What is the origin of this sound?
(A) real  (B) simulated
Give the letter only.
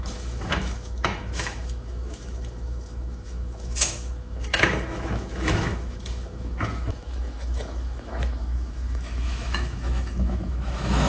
B